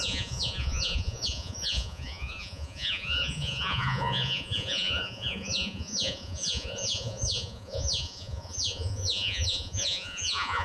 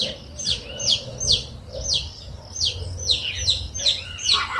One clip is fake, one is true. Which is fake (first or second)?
first